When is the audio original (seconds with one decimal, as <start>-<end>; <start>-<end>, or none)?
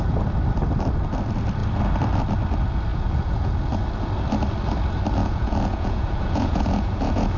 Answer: 0.0-2.9; 3.6-5.2